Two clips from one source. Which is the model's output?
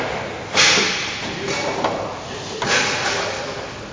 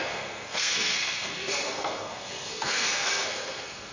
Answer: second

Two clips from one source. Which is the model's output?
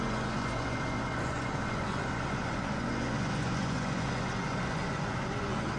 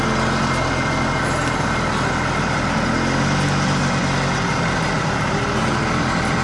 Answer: first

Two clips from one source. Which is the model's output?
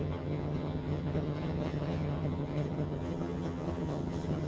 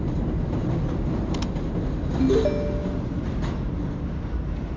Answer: first